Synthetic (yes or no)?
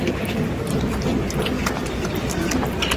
no